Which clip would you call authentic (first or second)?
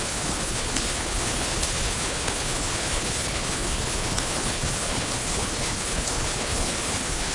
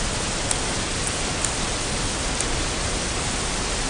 second